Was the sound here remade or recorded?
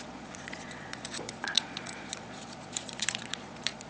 remade